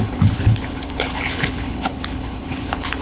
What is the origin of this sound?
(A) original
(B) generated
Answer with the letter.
B